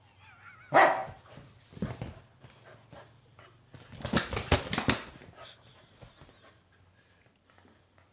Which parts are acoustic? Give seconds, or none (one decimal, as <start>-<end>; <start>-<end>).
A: 0.0-8.1